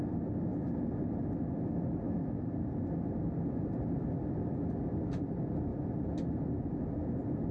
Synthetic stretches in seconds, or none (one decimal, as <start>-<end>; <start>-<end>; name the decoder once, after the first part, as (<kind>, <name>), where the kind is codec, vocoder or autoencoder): none